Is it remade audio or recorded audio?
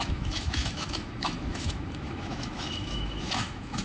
remade